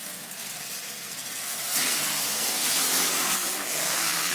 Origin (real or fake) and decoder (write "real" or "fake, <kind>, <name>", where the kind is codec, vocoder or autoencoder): fake, codec, SNAC